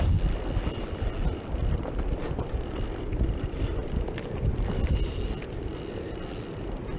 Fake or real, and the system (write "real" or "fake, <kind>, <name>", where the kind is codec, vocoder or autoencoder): real